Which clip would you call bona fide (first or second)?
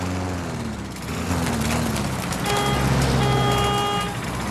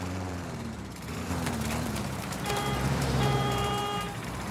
first